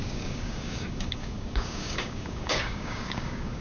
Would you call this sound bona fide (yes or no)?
no